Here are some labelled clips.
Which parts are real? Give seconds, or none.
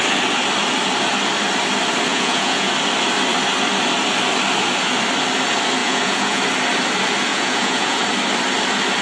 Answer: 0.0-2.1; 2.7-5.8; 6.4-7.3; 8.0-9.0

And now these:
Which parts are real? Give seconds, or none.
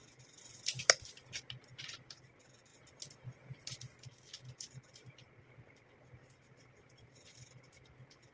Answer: 0.0-8.3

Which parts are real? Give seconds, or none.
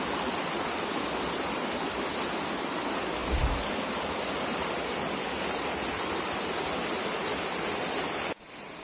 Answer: 0.0-8.8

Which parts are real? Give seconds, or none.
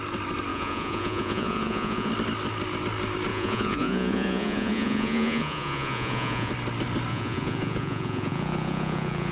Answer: 0.0-0.5; 2.1-3.3; 6.5-7.1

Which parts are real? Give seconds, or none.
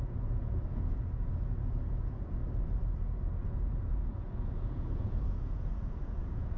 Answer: 2.4-3.7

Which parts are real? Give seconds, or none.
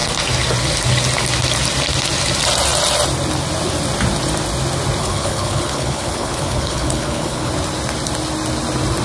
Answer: 0.0-5.0; 7.5-9.0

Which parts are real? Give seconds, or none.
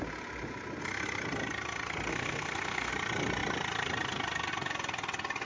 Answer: 0.0-2.1; 2.9-5.4